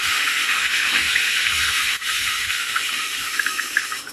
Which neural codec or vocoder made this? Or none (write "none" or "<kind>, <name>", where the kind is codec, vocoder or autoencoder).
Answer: autoencoder, DAC-VAE